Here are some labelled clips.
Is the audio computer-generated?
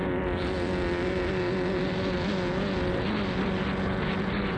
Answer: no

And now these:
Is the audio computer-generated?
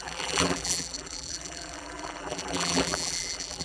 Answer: yes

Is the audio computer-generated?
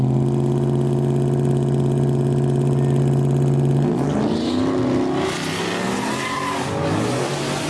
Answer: no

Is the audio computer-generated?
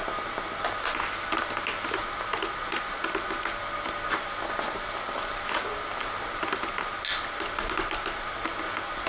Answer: no